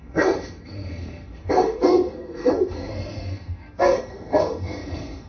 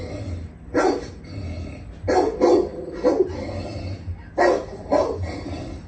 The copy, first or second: first